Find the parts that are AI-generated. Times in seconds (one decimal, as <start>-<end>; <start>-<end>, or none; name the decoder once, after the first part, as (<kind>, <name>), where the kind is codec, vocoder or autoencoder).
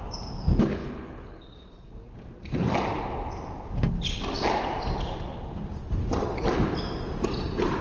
0.8-1.4 (codec, HILCodec)